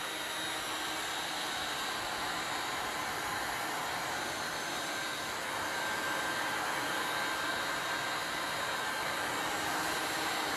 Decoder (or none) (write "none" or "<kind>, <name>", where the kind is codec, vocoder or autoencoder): none